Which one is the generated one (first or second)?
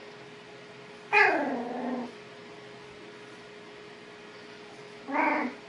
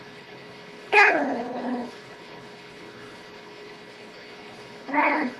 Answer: second